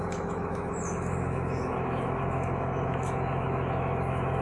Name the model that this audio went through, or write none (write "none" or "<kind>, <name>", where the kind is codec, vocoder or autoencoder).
autoencoder, DAC-VAE